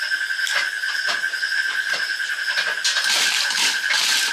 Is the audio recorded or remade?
recorded